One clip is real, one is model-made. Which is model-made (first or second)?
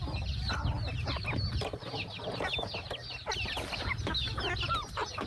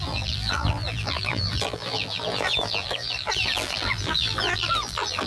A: second